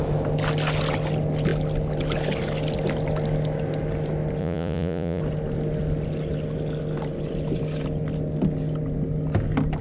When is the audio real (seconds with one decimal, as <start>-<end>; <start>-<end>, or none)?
0.0-4.4; 5.2-9.8